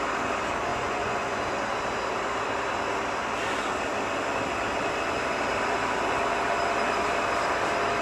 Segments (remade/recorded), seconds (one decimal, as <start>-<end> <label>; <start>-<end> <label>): 0.0-0.7 recorded; 0.7-1.4 remade; 1.4-8.0 recorded